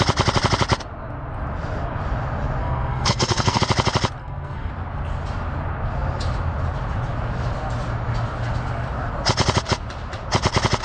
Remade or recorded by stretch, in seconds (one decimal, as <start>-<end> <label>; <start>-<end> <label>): 0.0-2.6 recorded; 2.6-3.6 remade; 3.6-4.2 recorded; 4.2-4.7 remade; 4.7-10.8 recorded